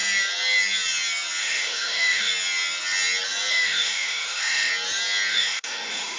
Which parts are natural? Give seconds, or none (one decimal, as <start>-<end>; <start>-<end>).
0.0-1.4; 2.3-3.5; 4.7-5.3